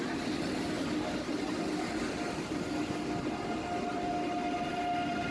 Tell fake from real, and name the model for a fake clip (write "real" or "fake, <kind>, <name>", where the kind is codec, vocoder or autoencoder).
real